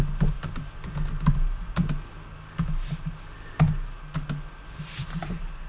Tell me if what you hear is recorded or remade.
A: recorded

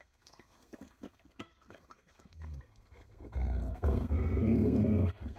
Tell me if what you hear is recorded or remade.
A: remade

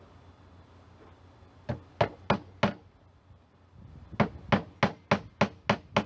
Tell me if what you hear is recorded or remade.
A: recorded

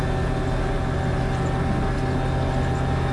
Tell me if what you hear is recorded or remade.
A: recorded